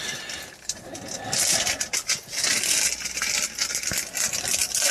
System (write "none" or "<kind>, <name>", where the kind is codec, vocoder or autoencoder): none